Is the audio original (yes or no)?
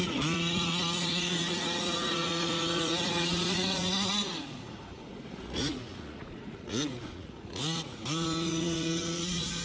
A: no